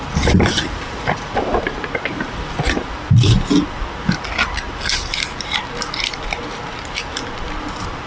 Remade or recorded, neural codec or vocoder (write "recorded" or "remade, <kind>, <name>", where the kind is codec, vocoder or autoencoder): recorded